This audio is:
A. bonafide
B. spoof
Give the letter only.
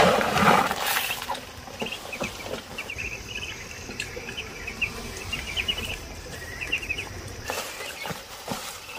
B